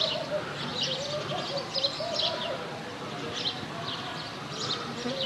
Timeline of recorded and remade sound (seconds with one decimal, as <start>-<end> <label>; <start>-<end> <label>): 0.0-5.3 recorded